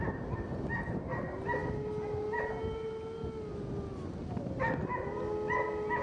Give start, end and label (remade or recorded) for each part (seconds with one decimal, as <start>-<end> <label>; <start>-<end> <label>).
0.0-6.0 recorded